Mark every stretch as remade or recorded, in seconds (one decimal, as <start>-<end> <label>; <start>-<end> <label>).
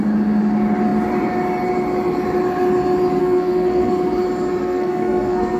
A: 0.0-3.2 recorded; 3.2-3.9 remade; 3.9-4.6 recorded; 4.6-5.6 remade